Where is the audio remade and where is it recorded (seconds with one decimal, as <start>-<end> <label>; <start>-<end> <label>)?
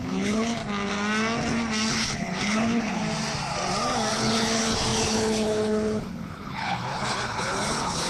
0.0-0.6 remade; 0.6-1.9 recorded; 1.9-3.0 remade; 3.0-4.1 recorded; 4.1-8.1 remade